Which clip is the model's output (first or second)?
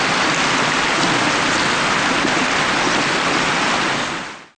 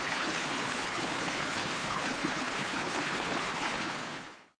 second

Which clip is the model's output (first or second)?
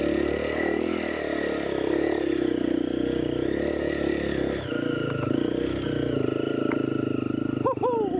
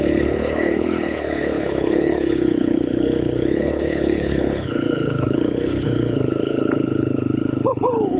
second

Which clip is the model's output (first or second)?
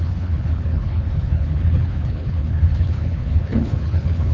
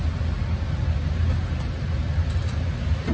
first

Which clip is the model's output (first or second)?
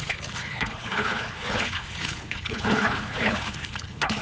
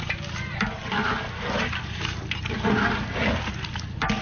first